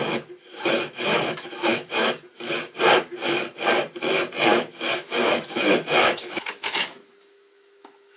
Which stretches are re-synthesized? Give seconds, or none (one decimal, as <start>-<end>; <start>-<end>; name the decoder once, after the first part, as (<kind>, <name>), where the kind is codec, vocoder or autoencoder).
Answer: 0.5-2.1 (autoencoder, DAC-VAE); 4.5-8.2